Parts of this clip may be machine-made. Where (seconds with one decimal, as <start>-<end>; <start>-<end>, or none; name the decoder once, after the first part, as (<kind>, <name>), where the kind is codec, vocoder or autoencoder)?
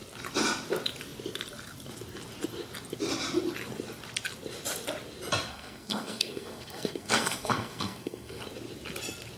5.5-8.4 (codec, SNAC)